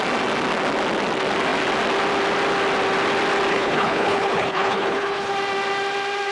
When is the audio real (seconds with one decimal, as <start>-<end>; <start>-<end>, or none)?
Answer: 0.0-3.5; 5.3-6.3